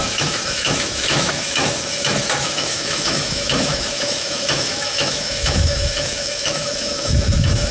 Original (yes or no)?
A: no